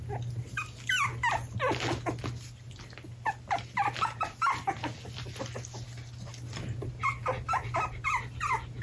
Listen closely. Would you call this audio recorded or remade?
recorded